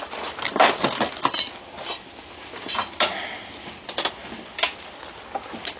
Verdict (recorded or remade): recorded